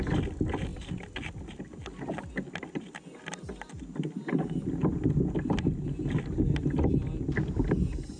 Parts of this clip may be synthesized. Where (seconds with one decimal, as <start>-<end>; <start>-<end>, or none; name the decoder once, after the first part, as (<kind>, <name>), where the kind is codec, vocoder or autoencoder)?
none